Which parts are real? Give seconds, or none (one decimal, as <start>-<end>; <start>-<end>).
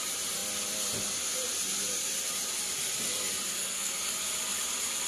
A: 0.0-3.6; 4.1-5.1